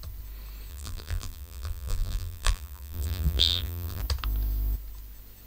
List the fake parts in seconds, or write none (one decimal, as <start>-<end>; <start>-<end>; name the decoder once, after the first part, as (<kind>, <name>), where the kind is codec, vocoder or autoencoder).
0.7-4.0 (vocoder, BigVGAN v2)